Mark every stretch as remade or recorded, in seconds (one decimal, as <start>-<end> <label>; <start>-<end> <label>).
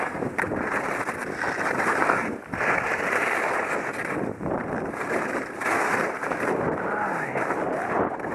0.0-1.2 recorded; 1.2-6.2 remade; 6.2-8.3 recorded